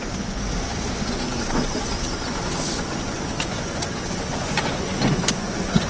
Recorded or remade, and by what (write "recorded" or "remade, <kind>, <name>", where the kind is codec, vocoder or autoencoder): remade, vocoder, Vocos